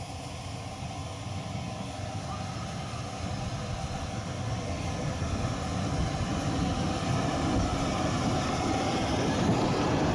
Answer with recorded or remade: recorded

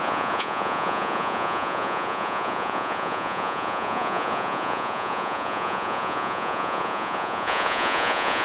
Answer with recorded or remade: remade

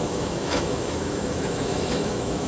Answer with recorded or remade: remade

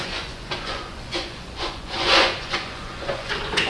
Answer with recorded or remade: remade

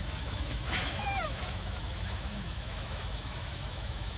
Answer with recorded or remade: remade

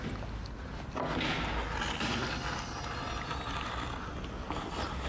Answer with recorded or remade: recorded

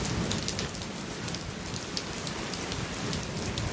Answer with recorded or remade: recorded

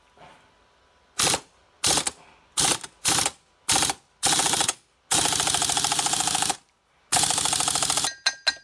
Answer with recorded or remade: recorded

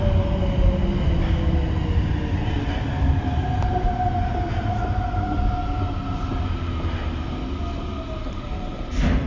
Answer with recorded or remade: recorded